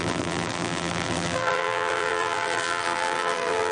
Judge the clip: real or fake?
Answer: fake